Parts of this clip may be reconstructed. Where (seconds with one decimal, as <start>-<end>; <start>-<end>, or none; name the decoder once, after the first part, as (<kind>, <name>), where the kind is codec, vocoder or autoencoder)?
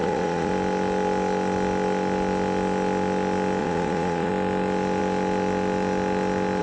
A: 0.0-0.5 (vocoder, Vocos); 3.6-4.3